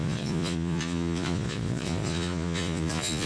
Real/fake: fake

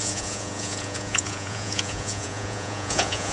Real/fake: fake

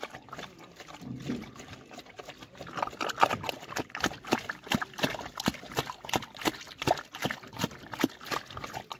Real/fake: real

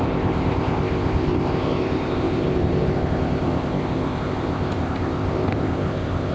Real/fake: fake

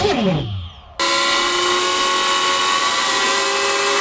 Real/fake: real